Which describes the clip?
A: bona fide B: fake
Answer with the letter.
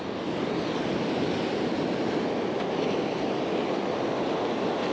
A